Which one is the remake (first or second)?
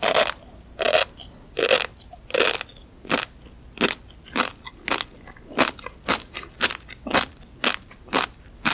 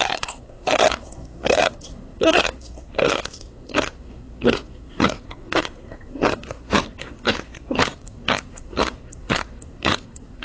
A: second